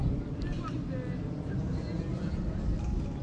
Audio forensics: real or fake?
real